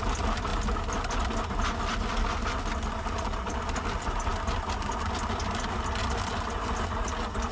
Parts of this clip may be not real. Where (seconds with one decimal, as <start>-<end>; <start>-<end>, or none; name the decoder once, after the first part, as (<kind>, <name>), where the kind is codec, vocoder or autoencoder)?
none